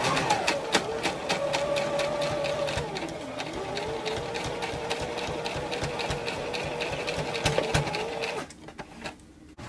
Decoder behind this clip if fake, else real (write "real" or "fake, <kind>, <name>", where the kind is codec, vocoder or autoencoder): real